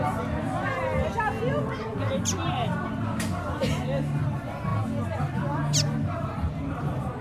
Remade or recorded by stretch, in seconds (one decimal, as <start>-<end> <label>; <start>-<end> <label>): 0.0-7.2 recorded

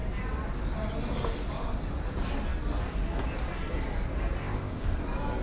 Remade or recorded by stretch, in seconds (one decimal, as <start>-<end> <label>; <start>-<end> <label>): 0.0-4.4 recorded; 4.4-5.0 remade; 5.0-5.4 recorded

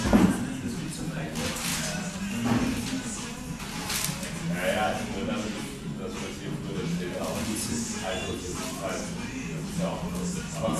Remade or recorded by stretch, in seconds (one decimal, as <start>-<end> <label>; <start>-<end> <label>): 0.0-10.8 recorded

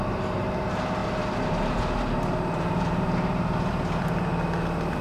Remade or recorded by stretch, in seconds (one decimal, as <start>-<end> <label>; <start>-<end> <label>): 0.0-4.3 remade; 4.3-5.0 recorded

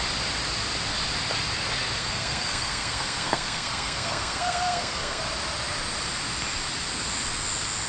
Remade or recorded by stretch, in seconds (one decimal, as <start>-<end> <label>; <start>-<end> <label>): 0.0-2.0 recorded; 2.0-5.2 remade; 5.2-7.9 recorded